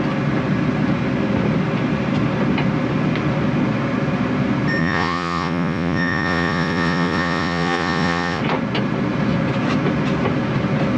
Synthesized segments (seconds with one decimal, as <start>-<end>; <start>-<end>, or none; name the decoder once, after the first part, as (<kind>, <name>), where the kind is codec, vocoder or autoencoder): 4.8-8.4 (vocoder, Vocos)

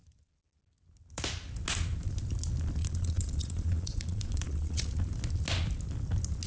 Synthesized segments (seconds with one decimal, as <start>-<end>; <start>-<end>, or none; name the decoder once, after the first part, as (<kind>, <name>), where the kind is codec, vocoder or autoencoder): 2.8-4.9 (vocoder, Vocos)

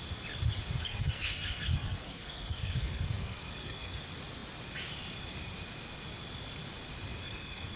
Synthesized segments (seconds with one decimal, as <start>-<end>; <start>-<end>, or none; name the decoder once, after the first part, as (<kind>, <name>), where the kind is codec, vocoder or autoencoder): 0.8-4.0 (codec, SNAC); 7.2-7.8

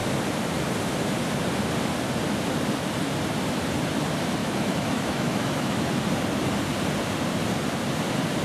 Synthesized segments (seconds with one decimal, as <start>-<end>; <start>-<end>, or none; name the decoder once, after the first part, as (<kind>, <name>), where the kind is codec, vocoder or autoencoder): 4.4-5.9 (autoencoder, DAC-VAE)

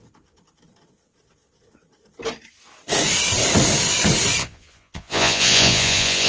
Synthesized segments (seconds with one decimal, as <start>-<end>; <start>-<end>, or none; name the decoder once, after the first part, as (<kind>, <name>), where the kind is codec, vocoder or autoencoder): 4.4-6.3 (vocoder, Vocos)

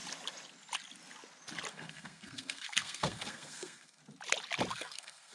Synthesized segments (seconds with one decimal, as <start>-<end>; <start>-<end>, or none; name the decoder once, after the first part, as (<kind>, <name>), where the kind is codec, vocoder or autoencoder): 1.7-4.0 (codec, SNAC); 4.7-5.3

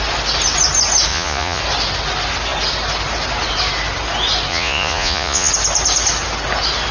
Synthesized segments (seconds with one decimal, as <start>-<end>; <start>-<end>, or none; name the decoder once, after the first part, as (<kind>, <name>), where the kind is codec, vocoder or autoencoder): 1.1-1.6 (vocoder, Vocos); 4.5-5.5

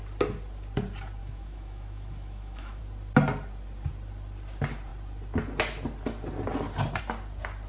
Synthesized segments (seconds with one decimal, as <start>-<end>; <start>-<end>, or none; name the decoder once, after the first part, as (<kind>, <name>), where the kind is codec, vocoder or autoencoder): 1.2-2.8 (autoencoder, DAC-VAE)